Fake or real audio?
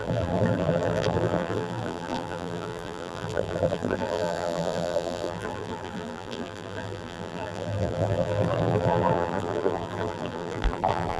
fake